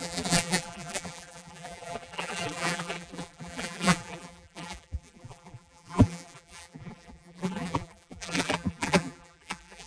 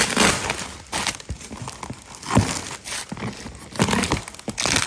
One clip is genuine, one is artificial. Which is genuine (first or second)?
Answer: second